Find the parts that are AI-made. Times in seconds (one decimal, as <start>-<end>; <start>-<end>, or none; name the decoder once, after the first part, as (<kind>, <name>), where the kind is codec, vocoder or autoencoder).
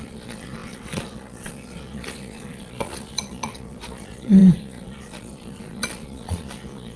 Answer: 0.0-7.0 (vocoder, Vocos)